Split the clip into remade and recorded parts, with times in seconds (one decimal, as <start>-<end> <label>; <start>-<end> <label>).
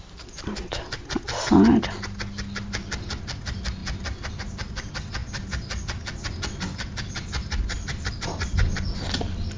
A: 0.0-9.6 recorded